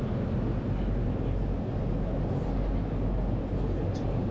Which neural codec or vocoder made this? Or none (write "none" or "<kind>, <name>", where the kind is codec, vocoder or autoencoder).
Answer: none